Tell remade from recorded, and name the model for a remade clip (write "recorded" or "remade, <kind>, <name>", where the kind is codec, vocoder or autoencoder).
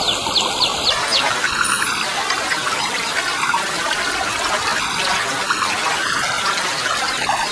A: recorded